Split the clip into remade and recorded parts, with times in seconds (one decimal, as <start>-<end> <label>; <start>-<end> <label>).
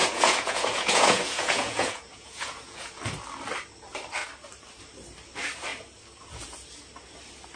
0.0-3.0 remade; 3.0-7.6 recorded